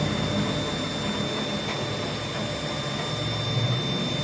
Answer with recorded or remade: recorded